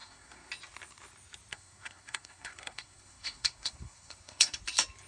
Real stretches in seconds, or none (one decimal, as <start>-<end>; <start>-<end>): 0.5-1.5; 4.6-5.1